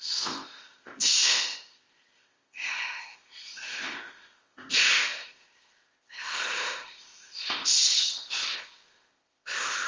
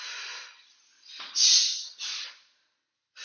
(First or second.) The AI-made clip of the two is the first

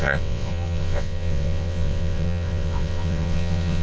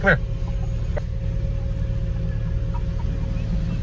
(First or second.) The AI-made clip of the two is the first